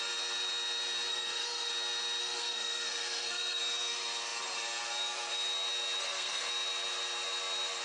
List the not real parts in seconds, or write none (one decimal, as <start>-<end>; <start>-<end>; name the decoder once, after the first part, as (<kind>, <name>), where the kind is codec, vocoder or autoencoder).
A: 1.1-1.7 (codec, SNAC); 2.2-3.6; 6.0-6.5